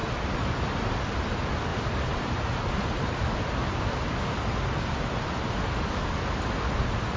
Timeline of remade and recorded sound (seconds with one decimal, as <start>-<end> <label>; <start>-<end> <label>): 0.0-7.2 recorded

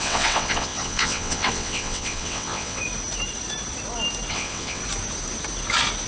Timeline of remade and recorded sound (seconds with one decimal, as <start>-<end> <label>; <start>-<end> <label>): 0.0-2.8 remade; 2.8-4.3 recorded; 4.3-4.8 remade; 4.8-6.1 recorded

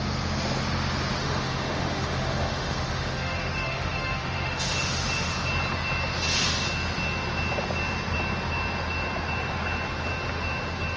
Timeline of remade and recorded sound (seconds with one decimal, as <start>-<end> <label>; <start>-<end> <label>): 0.0-1.2 recorded; 1.2-5.3 remade; 5.3-11.0 recorded

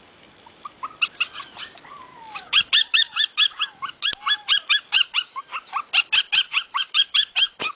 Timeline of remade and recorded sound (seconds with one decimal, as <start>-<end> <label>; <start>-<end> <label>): 0.0-2.1 recorded; 2.1-5.4 remade; 5.4-6.5 recorded; 6.5-7.8 remade

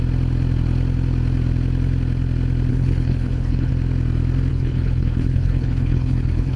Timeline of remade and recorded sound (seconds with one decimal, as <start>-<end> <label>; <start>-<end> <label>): 0.0-2.7 recorded; 2.7-3.7 remade; 3.7-4.5 recorded; 4.5-6.6 remade